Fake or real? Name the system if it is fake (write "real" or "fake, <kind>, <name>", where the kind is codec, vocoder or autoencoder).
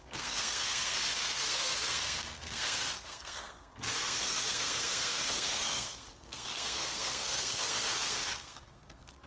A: fake, codec, SNAC